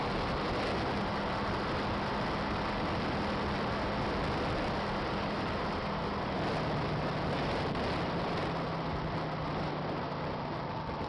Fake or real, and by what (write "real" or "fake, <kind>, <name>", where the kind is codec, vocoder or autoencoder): real